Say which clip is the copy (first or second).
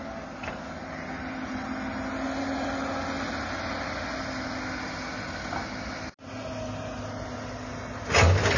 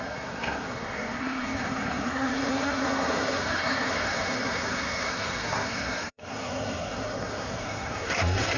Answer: second